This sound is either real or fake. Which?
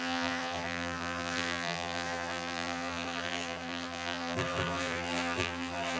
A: fake